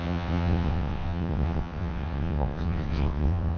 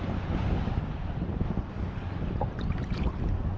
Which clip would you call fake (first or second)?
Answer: first